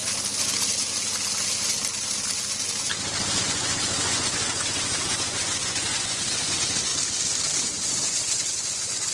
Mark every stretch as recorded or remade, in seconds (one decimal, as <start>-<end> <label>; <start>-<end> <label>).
0.0-3.4 recorded; 3.4-6.9 remade; 6.9-7.6 recorded; 7.6-9.1 remade